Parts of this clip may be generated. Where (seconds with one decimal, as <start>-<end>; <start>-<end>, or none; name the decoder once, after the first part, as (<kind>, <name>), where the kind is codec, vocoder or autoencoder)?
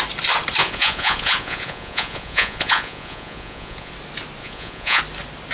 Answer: 0.6-3.9 (vocoder, Vocos); 4.4-5.0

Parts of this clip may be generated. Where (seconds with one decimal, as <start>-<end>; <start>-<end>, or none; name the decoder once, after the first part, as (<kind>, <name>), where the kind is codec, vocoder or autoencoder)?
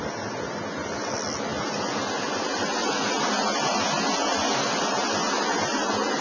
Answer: none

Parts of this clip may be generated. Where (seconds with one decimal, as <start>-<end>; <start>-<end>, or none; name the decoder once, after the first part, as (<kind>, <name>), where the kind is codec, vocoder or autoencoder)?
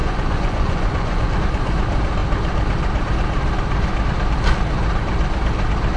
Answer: 0.0-1.4 (vocoder, Vocos)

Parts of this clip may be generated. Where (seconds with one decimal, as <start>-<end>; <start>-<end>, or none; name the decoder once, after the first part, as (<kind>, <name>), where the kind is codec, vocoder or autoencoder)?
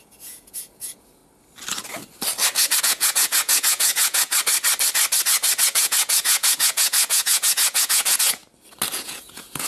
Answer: 0.0-1.2 (vocoder, Vocos); 2.8-4.3; 5.6-8.4; 8.9-9.7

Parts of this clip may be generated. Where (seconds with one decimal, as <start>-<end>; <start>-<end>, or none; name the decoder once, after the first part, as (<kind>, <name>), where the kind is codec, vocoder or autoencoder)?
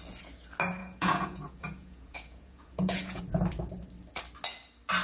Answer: 0.8-3.2 (vocoder, Vocos)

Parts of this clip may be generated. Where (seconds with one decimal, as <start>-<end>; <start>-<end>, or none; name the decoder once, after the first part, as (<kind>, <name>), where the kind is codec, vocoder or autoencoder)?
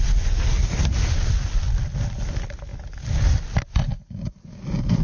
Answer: none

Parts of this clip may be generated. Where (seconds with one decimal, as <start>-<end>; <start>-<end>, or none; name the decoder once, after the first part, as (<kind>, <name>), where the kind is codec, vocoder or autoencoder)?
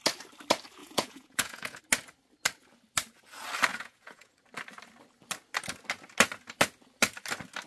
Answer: 0.8-1.8 (vocoder, Vocos); 3.7-4.3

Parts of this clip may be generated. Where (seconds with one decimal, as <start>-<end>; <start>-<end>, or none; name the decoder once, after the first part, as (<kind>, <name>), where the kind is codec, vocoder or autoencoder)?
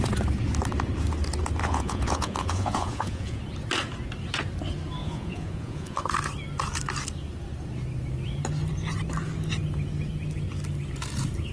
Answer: 1.6-3.4 (vocoder, Vocos); 5.0-6.0